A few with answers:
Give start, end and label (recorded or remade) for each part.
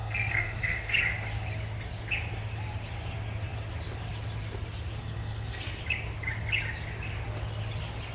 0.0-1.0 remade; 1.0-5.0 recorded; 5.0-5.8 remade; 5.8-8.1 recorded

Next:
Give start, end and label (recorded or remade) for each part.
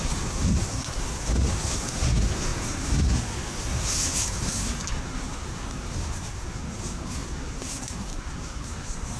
0.0-9.2 remade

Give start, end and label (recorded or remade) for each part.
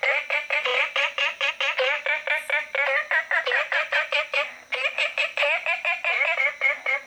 0.0-0.7 recorded; 0.7-1.5 remade; 1.5-7.1 recorded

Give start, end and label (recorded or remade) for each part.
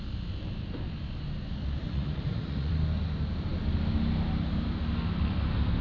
0.0-1.8 recorded; 1.8-2.7 remade; 2.7-5.8 recorded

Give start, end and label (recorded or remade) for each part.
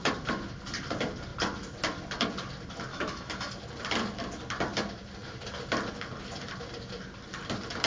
0.0-2.9 recorded; 2.9-3.5 remade; 3.5-7.9 recorded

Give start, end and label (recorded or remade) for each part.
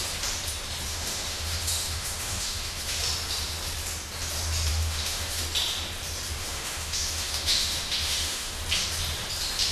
0.0-0.9 recorded; 0.9-3.0 remade; 3.0-4.7 recorded; 4.7-5.4 remade; 5.4-6.4 recorded; 6.4-8.6 remade; 8.6-9.7 recorded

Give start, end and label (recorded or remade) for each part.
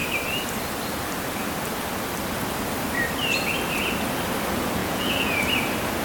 0.0-4.8 recorded; 4.8-5.4 remade; 5.4-6.0 recorded